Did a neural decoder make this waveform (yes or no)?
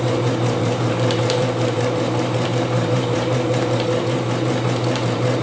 yes